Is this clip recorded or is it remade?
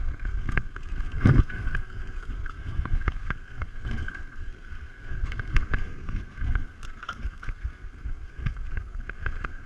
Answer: remade